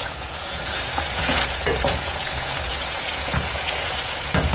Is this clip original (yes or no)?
no